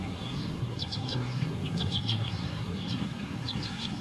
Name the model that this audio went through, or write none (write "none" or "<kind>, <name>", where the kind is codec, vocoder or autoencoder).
codec, SNAC